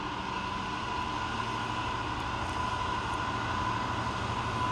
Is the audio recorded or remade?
recorded